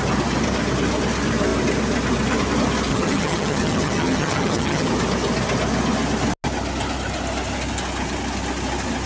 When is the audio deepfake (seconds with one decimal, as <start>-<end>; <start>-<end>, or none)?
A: 2.9-4.9